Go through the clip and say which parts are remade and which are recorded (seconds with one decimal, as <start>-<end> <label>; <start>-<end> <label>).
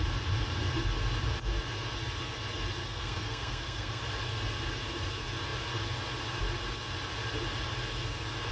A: 0.0-2.8 recorded; 2.8-4.0 remade; 4.0-8.5 recorded